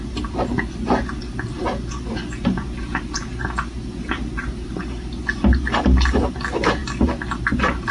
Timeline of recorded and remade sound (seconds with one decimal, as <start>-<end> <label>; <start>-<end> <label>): 0.0-7.9 recorded